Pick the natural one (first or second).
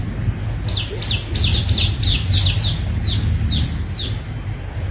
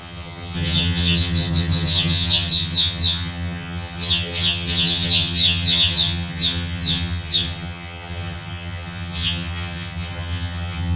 first